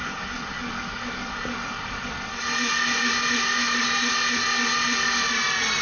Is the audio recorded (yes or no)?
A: yes